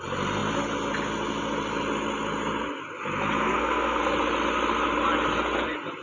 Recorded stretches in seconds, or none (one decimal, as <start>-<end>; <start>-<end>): 0.0-3.4; 4.0-6.0